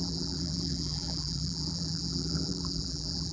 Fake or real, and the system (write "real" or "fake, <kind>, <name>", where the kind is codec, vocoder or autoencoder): fake, vocoder, BigVGAN v2